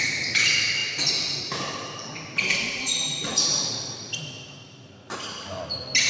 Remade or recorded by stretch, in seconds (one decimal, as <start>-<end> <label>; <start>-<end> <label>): 0.0-6.1 recorded